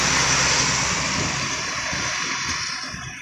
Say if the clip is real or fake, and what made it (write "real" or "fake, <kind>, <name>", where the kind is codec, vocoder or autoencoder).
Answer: real